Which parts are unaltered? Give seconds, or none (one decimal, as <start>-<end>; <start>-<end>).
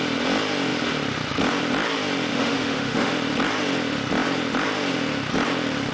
0.0-2.3; 3.1-5.9